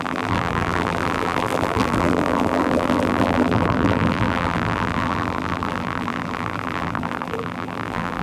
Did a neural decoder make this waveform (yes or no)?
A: yes